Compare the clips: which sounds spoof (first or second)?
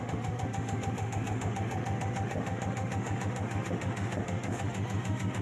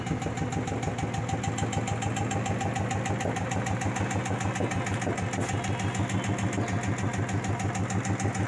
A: first